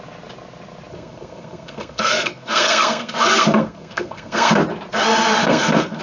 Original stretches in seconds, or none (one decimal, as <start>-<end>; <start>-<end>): 0.0-0.9; 4.5-5.4